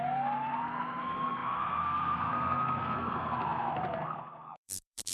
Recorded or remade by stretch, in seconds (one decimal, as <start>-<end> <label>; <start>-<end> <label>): 0.0-5.1 remade